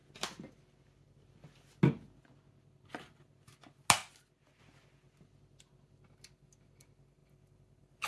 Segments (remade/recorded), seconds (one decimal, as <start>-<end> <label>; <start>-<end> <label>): 0.0-7.2 recorded; 7.2-8.1 remade